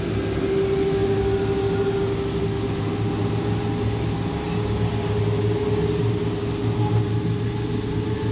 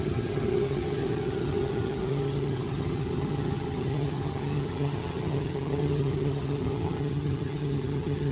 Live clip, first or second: first